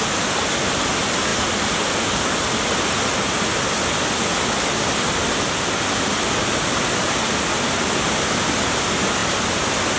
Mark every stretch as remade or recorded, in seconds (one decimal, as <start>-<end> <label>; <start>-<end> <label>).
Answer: 0.0-10.0 recorded